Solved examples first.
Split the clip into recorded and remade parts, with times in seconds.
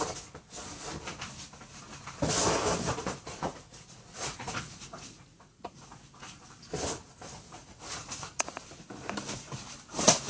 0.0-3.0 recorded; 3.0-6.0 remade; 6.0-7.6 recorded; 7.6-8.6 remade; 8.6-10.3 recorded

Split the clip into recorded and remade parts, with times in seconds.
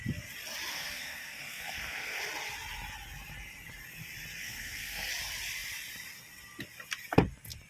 0.0-0.7 recorded; 0.7-2.2 remade; 2.2-4.4 recorded; 4.4-5.1 remade; 5.1-7.7 recorded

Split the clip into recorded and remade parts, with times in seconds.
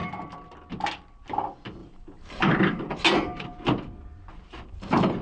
0.0-1.8 recorded; 1.8-2.9 remade; 2.9-5.2 recorded